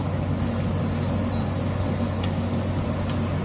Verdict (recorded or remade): recorded